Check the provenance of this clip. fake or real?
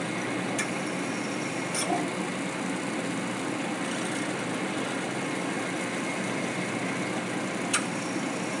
real